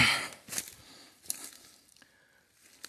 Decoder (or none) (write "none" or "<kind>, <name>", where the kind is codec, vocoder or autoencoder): none